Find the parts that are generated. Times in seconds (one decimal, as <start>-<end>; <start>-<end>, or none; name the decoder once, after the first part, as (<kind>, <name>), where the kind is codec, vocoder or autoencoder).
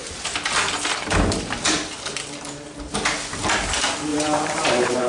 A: 4.1-5.1 (vocoder, BigVGAN v2)